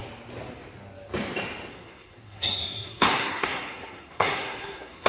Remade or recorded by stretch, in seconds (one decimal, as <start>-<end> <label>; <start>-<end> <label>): 0.0-1.7 recorded; 1.7-5.1 remade